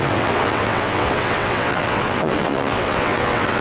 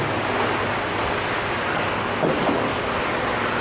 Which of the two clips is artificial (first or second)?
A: first